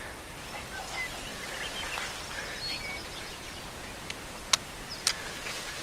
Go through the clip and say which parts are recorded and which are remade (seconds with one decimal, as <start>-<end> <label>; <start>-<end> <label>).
0.0-3.0 recorded; 3.0-3.9 remade; 3.9-5.1 recorded; 5.1-5.8 remade